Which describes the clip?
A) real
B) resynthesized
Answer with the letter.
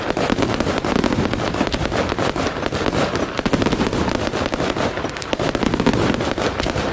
A